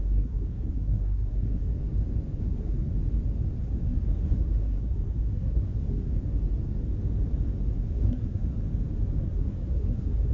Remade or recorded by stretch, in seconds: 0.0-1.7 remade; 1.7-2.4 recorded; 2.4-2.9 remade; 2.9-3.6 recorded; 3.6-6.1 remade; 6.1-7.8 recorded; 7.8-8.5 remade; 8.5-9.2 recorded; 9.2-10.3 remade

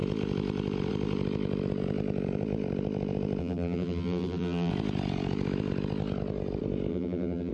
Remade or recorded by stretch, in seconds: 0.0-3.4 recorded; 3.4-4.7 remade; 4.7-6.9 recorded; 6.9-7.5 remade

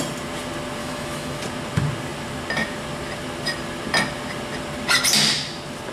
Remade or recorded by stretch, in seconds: 0.0-0.8 recorded; 0.8-1.4 remade; 1.4-5.9 recorded

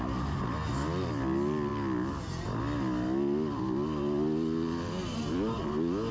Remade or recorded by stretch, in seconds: 0.0-6.1 recorded